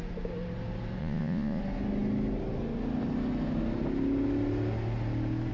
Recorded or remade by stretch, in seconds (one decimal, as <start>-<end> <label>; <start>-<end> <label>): 0.0-1.0 recorded; 1.0-1.6 remade; 1.6-5.5 recorded

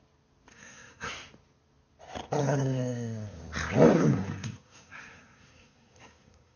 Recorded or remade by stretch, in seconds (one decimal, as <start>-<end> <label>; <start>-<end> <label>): 0.0-0.5 recorded; 0.5-1.1 remade; 1.1-2.4 recorded; 2.4-3.4 remade; 3.4-3.9 recorded; 3.9-6.6 remade

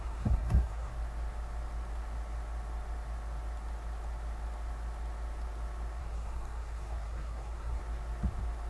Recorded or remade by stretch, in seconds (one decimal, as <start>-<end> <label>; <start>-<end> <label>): 0.0-0.9 remade; 0.9-6.0 recorded; 6.0-7.8 remade; 7.8-8.7 recorded

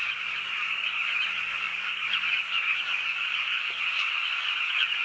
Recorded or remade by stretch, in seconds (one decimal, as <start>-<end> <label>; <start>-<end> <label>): 0.0-5.0 remade

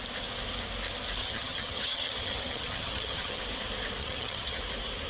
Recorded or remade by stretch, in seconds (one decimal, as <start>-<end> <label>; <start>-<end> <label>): 0.0-1.2 recorded; 1.2-3.4 remade; 3.4-4.0 recorded; 4.0-4.6 remade; 4.6-5.1 recorded

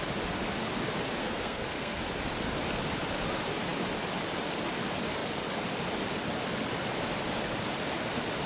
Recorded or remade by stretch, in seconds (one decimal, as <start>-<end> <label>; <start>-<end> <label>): 0.0-1.2 recorded; 1.2-2.0 remade; 2.0-8.5 recorded